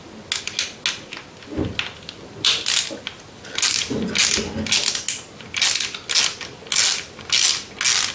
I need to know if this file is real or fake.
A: real